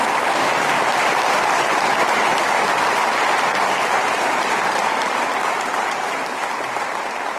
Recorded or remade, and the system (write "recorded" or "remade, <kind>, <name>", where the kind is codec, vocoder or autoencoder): remade, vocoder, BigVGAN v2